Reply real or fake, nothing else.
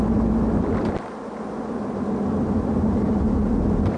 real